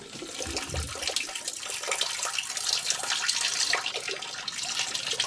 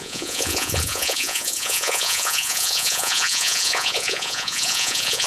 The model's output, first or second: second